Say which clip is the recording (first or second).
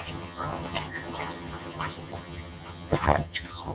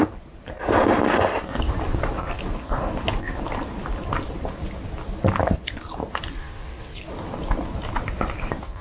second